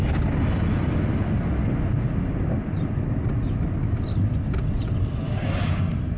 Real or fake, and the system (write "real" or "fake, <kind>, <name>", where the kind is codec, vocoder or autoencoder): real